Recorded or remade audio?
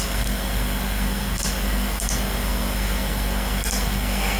remade